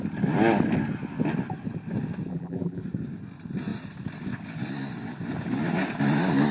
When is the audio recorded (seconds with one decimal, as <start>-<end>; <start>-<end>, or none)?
0.0-2.3; 2.8-6.5